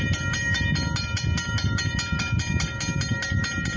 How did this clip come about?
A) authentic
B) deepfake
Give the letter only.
A